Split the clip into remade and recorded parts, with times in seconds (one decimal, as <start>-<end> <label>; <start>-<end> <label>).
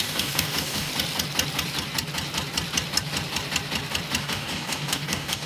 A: 0.0-0.9 remade; 0.9-4.2 recorded; 4.2-5.5 remade